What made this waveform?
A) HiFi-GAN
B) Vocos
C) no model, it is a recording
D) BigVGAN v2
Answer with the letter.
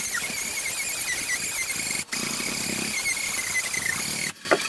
C